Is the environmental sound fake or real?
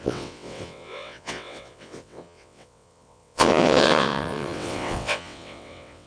fake